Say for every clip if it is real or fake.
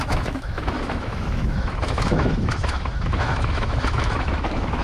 fake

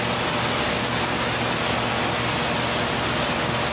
real